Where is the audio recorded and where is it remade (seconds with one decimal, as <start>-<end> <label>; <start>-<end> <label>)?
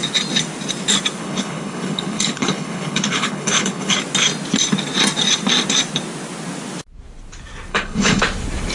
0.0-1.2 recorded; 1.2-4.0 remade; 4.0-7.7 recorded; 7.7-8.2 remade; 8.2-8.7 recorded